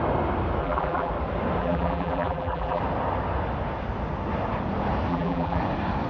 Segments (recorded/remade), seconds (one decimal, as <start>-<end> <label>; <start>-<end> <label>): 0.0-0.6 recorded; 0.6-1.1 remade; 1.1-1.6 recorded; 1.6-2.8 remade; 2.8-5.1 recorded; 5.1-5.6 remade; 5.6-6.1 recorded